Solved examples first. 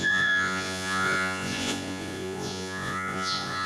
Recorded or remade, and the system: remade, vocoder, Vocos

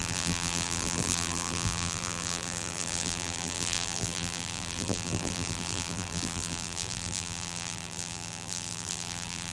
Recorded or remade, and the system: remade, vocoder, BigVGAN v2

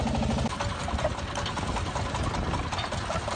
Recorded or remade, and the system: recorded